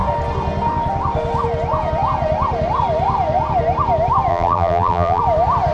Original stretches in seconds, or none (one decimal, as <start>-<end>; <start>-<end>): 0.0-4.3; 5.2-5.7